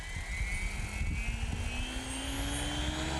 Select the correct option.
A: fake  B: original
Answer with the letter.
B